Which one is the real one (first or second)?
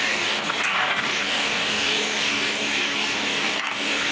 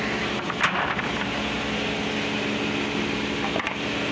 second